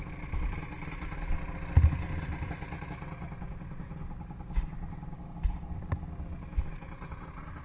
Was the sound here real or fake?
real